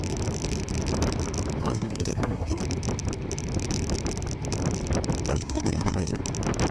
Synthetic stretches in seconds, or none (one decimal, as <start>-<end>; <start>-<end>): 1.6-2.6; 5.3-6.2